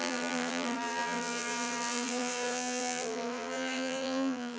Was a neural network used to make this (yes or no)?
yes